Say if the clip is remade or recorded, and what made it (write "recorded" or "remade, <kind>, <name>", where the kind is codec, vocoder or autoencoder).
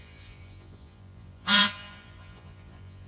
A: remade, vocoder, Vocos